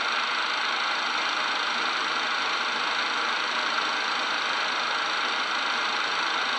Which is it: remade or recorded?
remade